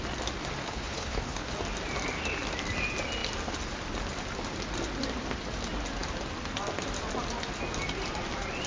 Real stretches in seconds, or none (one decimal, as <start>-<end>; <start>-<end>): 0.0-0.6; 1.5-8.7